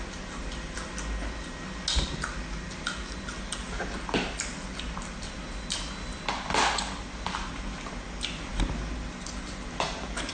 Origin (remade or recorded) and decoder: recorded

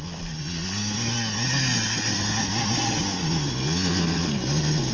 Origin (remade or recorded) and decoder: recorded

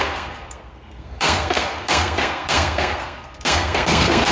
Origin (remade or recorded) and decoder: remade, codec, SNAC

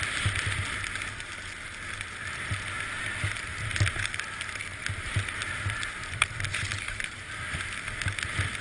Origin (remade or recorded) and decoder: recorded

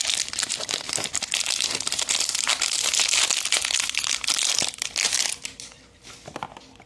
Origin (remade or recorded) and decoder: recorded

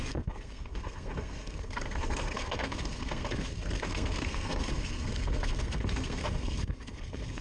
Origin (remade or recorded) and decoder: remade, codec, SNAC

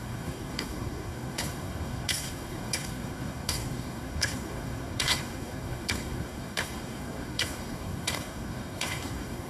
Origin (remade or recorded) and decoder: remade, codec, SNAC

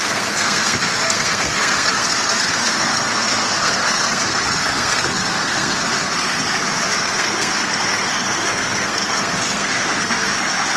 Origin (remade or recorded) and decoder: remade, codec, SNAC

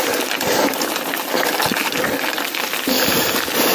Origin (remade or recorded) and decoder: recorded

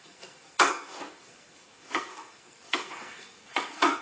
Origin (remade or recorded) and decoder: remade, codec, SNAC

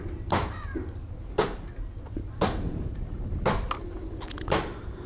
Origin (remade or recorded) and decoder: recorded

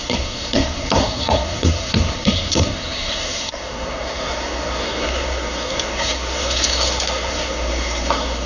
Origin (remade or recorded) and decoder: remade, codec, SNAC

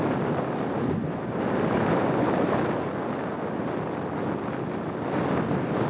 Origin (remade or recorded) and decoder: recorded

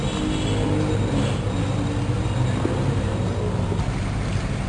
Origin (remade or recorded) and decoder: recorded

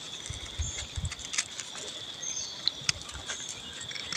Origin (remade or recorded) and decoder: recorded